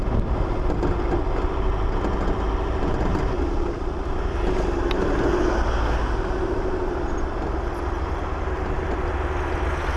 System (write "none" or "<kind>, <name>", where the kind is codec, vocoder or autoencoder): none